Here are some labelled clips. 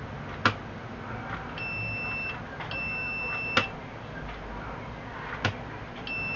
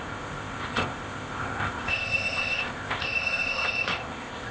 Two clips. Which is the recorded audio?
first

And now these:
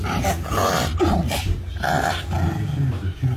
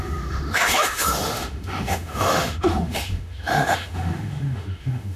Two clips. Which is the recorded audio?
first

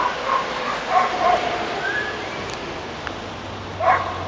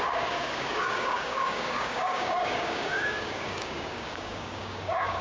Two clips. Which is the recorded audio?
first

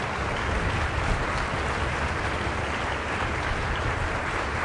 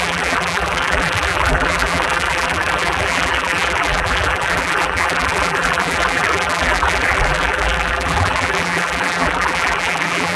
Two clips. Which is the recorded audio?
first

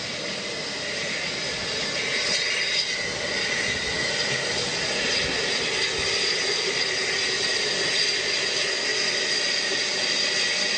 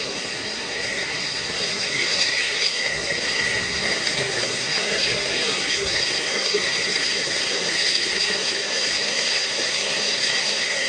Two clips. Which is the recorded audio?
first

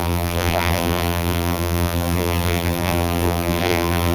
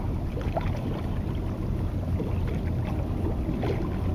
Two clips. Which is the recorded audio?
second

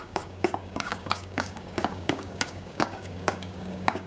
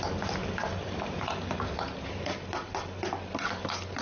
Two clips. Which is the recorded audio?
second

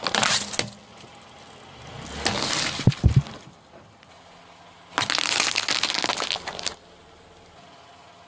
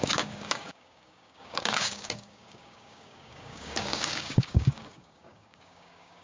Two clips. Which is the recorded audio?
first